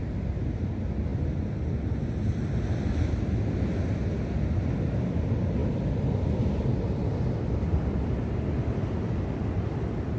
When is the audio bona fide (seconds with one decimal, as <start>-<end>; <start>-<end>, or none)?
0.0-10.2